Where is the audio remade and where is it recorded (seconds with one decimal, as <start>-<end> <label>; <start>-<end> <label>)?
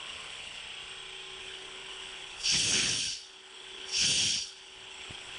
0.0-0.6 remade; 0.6-1.4 recorded; 1.4-5.4 remade